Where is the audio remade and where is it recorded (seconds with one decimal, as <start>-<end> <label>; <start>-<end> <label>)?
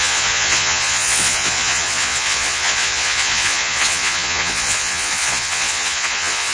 0.0-6.5 remade